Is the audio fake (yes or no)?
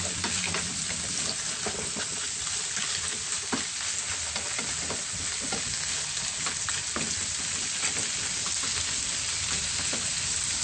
no